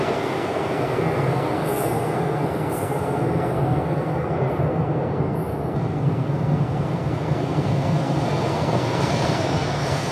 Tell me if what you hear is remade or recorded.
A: remade